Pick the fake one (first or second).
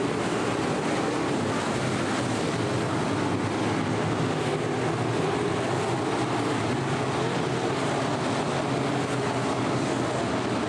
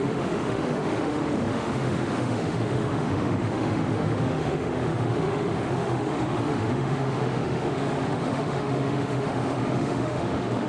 second